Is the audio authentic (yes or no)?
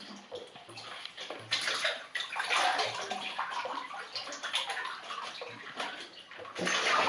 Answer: yes